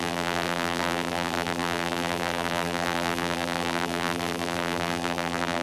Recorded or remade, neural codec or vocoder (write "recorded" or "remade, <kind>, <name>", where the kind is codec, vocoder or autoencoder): remade, vocoder, BigVGAN v2